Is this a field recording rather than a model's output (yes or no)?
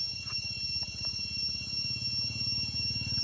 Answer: yes